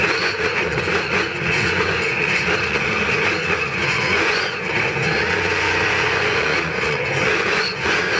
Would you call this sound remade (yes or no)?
yes